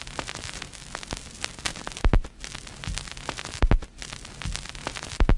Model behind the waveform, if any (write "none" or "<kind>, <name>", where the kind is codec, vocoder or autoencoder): none